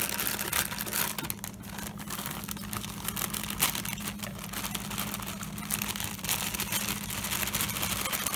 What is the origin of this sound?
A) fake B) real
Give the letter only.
B